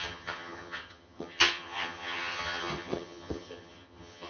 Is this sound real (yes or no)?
no